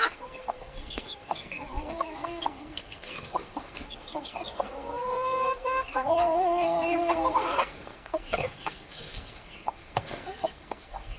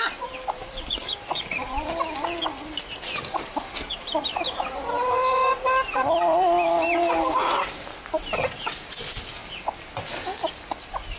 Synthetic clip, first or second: first